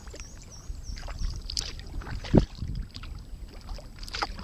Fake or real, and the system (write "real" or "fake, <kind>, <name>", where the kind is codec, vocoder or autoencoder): real